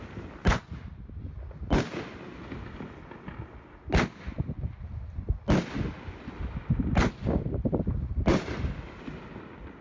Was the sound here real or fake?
real